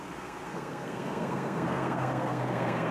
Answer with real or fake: fake